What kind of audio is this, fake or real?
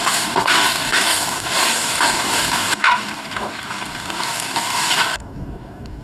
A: fake